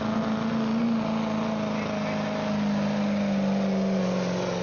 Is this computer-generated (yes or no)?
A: no